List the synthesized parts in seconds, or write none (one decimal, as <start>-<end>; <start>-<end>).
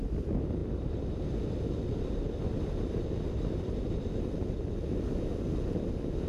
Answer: none